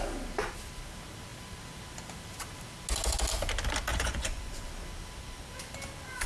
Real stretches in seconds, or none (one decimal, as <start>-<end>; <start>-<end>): 0.0-3.9; 4.7-6.3